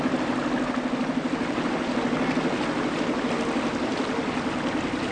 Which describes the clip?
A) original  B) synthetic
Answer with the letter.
A